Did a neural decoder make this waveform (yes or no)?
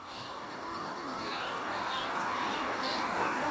yes